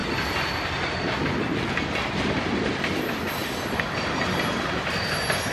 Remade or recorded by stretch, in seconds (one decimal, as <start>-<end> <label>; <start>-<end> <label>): 0.0-5.5 recorded

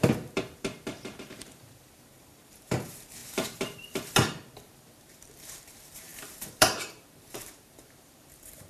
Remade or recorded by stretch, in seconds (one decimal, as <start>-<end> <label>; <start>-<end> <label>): 0.0-8.7 remade

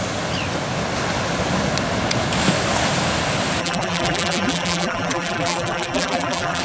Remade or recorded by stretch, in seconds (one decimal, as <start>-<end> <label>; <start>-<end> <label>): 0.0-3.6 recorded; 3.6-6.6 remade

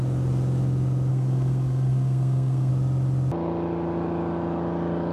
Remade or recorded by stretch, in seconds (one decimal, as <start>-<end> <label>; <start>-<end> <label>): 0.0-1.1 recorded; 1.1-2.7 remade; 2.7-5.1 recorded

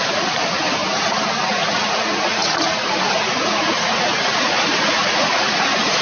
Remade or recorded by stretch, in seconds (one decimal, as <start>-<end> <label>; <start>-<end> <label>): 0.0-0.8 remade; 0.8-1.5 recorded; 1.5-6.0 remade